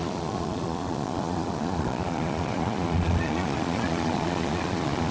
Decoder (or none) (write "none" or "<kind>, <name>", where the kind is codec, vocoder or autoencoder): vocoder, Vocos